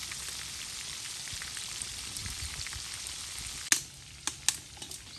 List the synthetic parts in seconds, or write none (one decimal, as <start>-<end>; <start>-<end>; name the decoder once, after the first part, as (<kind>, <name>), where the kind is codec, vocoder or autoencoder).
none

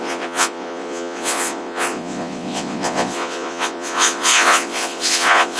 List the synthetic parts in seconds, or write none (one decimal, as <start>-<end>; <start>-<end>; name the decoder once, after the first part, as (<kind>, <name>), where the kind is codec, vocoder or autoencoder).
0.0-5.6 (vocoder, Vocos)

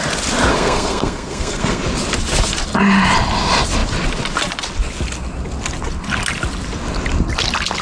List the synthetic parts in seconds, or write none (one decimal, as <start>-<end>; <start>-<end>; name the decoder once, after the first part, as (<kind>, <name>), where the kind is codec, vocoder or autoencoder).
0.5-1.8 (codec, SNAC)

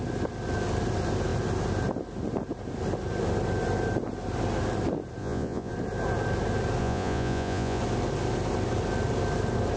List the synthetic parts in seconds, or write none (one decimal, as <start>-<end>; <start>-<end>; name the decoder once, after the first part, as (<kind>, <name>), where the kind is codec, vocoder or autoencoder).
5.2-5.7 (vocoder, Vocos); 6.8-7.8

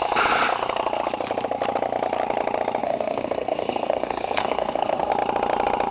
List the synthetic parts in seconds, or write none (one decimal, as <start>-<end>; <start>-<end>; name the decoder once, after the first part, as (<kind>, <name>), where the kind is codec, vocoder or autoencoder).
2.8-5.1 (codec, SNAC)

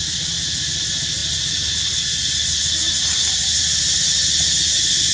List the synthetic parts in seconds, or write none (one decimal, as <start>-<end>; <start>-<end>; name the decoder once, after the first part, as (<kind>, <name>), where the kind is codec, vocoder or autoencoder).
none

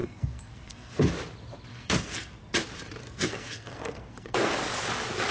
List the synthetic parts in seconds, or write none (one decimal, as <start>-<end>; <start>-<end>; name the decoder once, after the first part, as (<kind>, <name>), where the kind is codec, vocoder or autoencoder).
0.0-1.1 (codec, SNAC); 1.7-2.3; 3.0-4.5

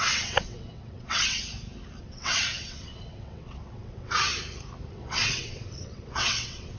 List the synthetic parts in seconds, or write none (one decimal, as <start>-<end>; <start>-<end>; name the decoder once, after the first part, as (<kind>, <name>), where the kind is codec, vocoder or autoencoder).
0.0-1.4 (vocoder, WaveNeXt); 2.0-4.3; 4.9-6.8